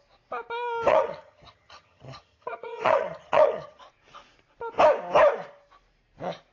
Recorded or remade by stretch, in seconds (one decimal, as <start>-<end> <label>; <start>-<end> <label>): 0.0-0.9 recorded; 0.9-3.8 remade; 3.8-6.5 recorded